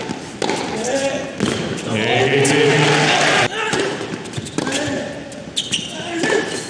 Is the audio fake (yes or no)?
no